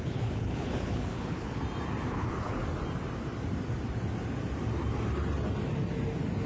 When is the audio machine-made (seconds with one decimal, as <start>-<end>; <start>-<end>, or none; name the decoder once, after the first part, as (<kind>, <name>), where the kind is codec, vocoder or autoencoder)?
0.0-1.6 (codec, HILCodec); 2.1-2.6